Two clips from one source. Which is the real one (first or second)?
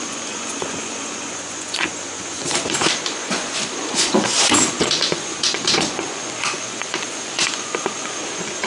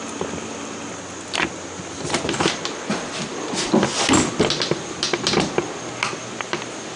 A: second